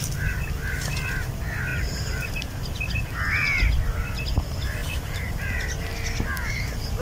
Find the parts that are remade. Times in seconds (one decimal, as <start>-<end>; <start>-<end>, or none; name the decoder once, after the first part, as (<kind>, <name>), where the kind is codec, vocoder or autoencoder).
1.7-2.4 (vocoder, BigVGAN v2); 4.8-5.6